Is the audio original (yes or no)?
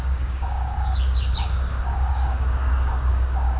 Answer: no